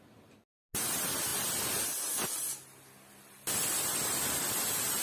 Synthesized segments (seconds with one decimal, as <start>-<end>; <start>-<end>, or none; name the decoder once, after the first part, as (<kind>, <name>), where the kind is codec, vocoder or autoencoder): none